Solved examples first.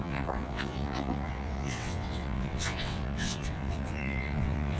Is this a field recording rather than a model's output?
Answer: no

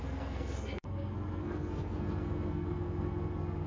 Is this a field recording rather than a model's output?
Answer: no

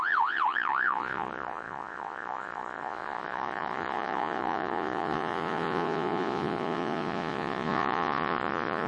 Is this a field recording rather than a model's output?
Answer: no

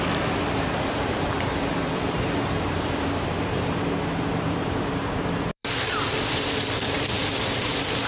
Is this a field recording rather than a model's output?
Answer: no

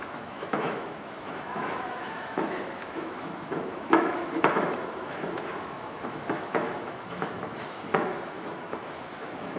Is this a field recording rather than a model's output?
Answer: no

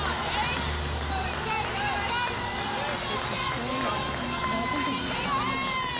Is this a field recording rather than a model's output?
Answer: yes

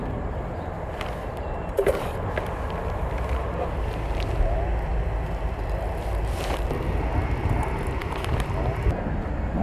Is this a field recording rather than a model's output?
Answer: yes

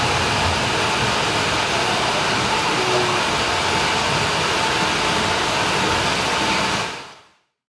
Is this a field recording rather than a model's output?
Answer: yes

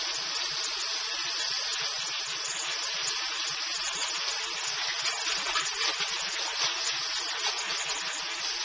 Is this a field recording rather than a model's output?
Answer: yes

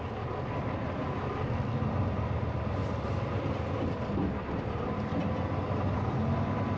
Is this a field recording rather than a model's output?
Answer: yes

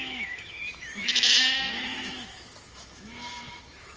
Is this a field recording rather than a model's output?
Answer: no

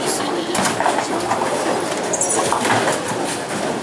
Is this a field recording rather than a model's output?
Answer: yes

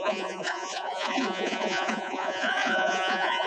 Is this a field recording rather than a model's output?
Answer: no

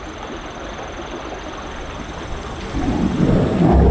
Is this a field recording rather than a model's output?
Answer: yes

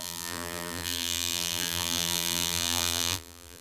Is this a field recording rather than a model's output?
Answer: no